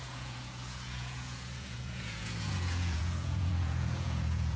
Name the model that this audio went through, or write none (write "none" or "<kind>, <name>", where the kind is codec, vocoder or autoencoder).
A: vocoder, Vocos